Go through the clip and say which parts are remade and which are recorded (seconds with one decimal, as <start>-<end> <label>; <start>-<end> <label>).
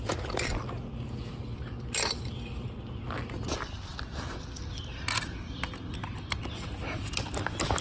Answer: 0.0-7.8 recorded